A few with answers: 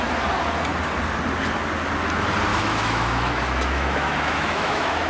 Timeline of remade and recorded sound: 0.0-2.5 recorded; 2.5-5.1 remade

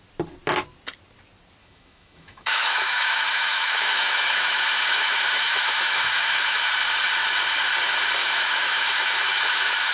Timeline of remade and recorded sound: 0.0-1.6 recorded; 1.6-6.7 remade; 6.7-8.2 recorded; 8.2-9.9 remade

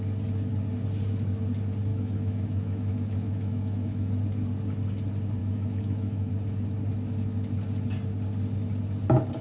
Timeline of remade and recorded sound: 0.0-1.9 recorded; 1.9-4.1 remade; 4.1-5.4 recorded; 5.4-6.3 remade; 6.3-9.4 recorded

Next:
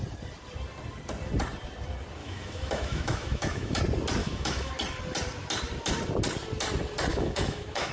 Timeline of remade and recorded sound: 0.0-2.2 recorded; 2.2-3.8 remade; 3.8-4.2 recorded; 4.2-4.7 remade; 4.7-7.1 recorded; 7.1-7.9 remade

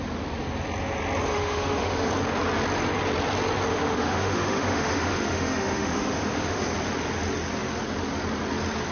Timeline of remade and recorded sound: 0.0-1.3 recorded; 1.3-2.1 remade; 2.1-3.7 recorded; 3.7-6.6 remade; 6.6-8.9 recorded